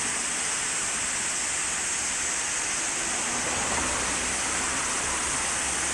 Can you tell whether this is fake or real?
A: real